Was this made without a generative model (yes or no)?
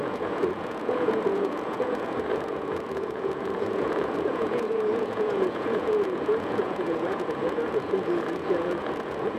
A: no